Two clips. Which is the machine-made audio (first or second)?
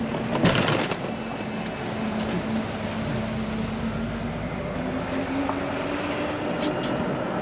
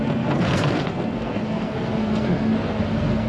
second